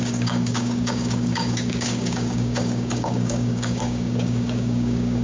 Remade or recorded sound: remade